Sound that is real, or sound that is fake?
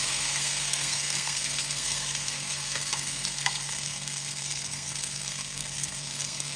fake